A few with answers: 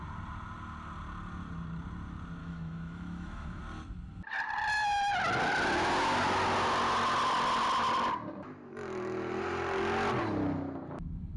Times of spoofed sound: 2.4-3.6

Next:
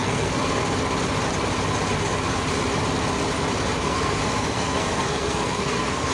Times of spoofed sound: 0.0-0.6; 3.8-6.1

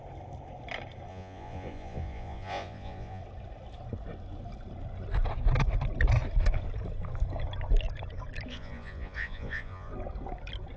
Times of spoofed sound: 1.1-3.2; 8.5-9.9

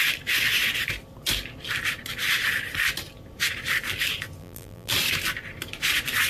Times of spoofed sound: 4.4-4.9

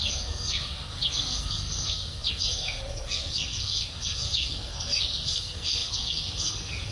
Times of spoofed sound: 0.0-6.9

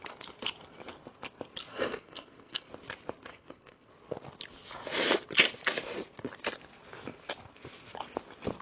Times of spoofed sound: 1.7-2.7; 3.3-3.9

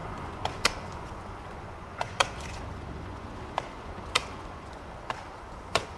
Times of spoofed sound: 0.0-6.0